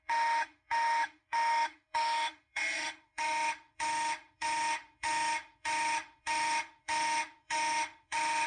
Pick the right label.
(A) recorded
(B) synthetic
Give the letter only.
B